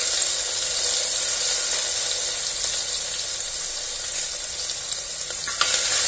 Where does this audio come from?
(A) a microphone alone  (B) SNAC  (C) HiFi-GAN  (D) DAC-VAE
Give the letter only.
A